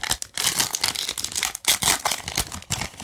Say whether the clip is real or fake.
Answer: real